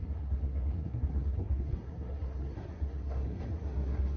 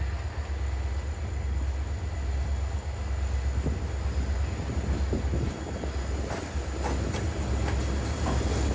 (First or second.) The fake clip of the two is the first